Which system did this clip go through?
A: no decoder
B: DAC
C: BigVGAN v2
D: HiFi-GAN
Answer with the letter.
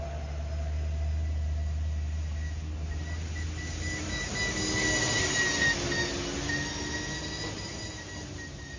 A